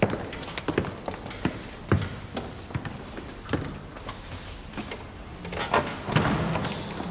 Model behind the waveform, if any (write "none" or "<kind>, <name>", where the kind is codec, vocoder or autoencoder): none